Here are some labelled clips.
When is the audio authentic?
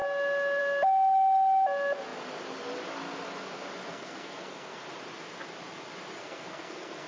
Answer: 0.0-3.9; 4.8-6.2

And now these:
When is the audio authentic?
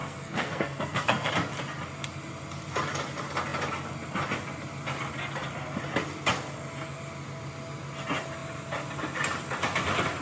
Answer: 1.3-10.2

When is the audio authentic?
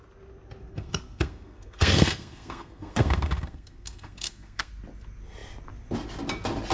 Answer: 0.0-0.7; 4.7-6.7